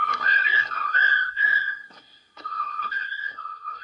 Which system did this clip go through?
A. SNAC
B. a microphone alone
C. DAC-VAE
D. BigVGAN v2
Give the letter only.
A